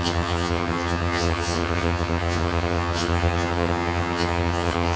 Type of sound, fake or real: fake